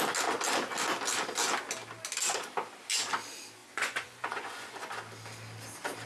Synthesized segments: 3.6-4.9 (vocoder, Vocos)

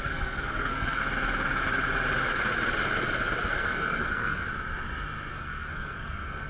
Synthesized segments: 0.0-1.0 (codec, SNAC); 3.5-4.4; 5.3-6.5

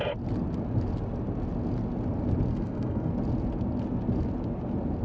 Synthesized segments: 2.5-3.1 (codec, SNAC)